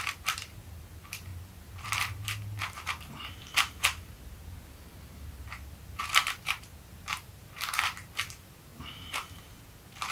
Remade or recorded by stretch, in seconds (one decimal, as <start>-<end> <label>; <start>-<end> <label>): 0.0-10.1 remade

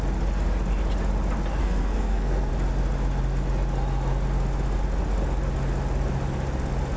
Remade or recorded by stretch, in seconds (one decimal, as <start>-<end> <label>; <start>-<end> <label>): 0.0-1.6 recorded; 1.6-2.5 remade; 2.5-7.0 recorded

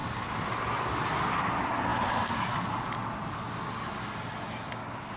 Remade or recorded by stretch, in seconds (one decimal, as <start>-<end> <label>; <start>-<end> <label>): 0.0-5.2 recorded

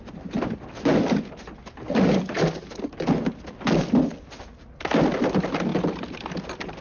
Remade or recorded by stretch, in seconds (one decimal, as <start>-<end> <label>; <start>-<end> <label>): 0.0-6.8 recorded

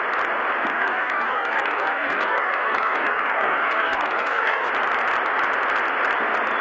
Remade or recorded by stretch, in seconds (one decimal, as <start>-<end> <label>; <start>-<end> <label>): 0.0-0.7 recorded; 0.7-4.7 remade; 4.7-6.6 recorded

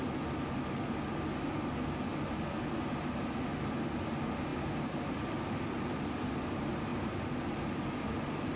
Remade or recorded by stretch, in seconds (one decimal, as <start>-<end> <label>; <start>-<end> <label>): 0.0-8.6 recorded

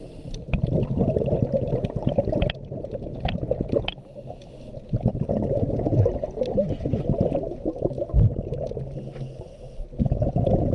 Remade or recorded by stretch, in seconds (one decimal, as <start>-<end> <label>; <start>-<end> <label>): 0.0-10.7 recorded

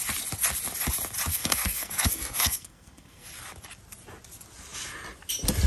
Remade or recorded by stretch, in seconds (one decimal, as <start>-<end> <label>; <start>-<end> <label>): 0.0-1.3 recorded; 1.3-3.3 remade; 3.3-5.7 recorded